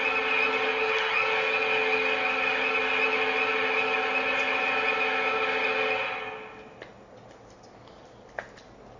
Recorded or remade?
recorded